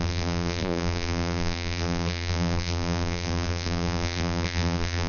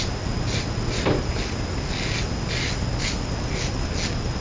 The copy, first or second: first